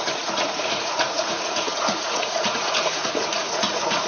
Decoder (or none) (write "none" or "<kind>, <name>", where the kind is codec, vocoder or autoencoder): vocoder, Vocos